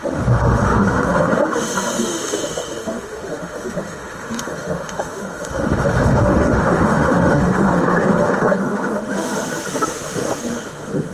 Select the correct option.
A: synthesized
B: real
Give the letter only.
A